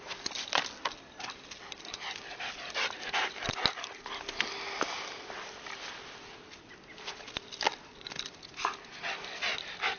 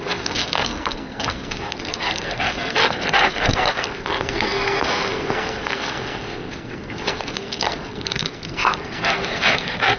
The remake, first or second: second